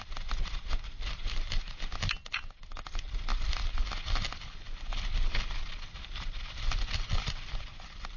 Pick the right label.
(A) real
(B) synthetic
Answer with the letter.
A